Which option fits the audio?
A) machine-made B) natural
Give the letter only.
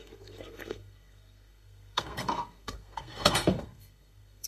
A